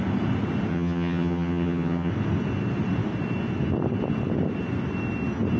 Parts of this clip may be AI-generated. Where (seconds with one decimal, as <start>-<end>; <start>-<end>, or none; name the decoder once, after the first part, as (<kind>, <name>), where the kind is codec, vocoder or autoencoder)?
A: 0.7-2.1 (vocoder, HiFi-GAN)